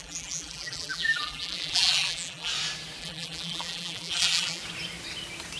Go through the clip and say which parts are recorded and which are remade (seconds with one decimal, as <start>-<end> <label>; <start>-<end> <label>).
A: 0.0-2.5 remade; 2.5-3.0 recorded; 3.0-4.6 remade; 4.6-5.6 recorded